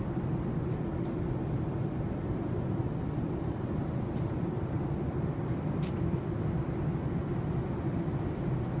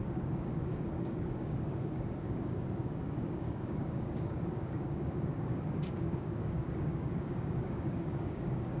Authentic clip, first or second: first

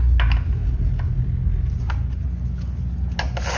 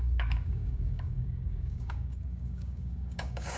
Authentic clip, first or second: first